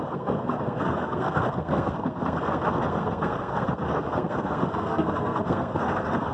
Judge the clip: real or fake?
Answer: fake